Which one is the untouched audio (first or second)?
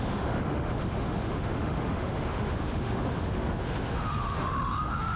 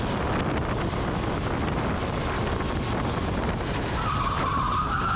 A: second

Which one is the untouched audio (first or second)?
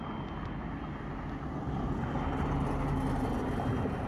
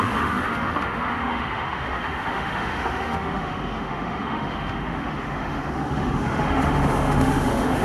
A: first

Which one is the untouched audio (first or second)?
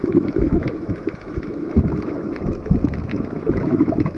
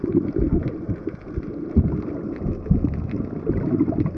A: second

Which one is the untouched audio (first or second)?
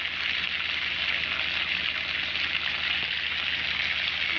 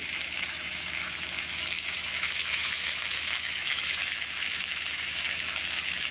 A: first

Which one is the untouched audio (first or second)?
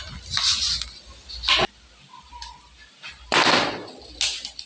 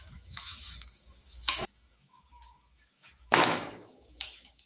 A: first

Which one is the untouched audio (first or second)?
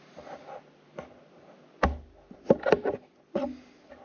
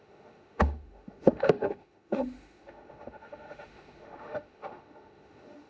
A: first